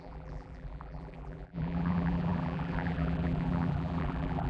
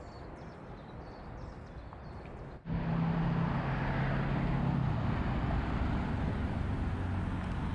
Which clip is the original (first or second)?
second